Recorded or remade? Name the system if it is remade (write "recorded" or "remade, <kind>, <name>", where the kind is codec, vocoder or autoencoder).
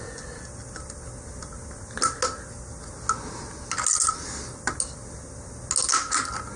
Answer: recorded